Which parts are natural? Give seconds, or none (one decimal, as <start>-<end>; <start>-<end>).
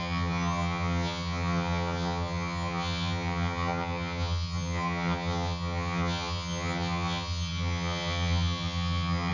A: none